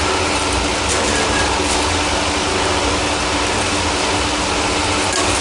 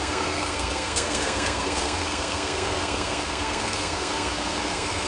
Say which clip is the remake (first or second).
second